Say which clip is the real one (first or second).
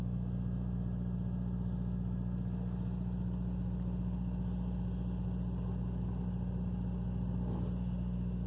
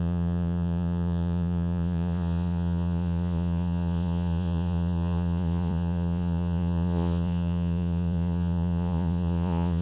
first